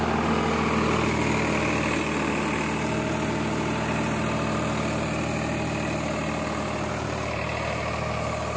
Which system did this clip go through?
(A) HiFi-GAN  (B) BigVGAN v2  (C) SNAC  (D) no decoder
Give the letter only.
D